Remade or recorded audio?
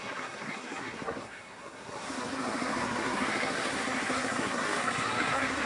remade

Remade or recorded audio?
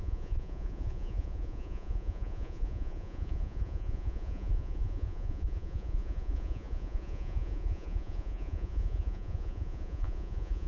remade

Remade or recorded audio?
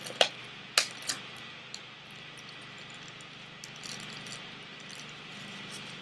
recorded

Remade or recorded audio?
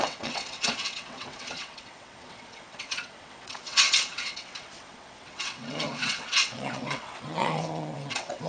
remade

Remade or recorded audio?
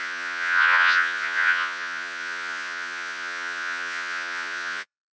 remade